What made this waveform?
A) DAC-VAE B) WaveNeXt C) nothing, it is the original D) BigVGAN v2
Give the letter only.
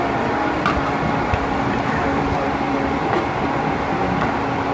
C